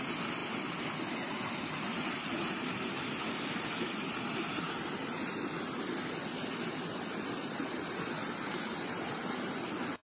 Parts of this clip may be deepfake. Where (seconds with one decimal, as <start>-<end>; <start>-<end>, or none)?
none